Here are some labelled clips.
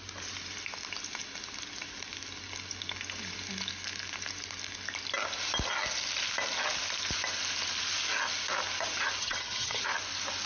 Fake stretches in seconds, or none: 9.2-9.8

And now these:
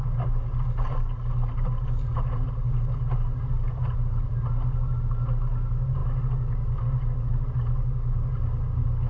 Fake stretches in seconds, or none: none

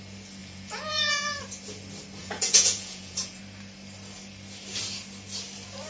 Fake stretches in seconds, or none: 0.4-1.4; 2.2-3.4

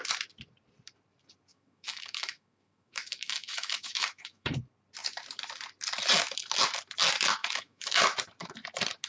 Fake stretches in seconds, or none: 1.5-4.5; 7.4-8.0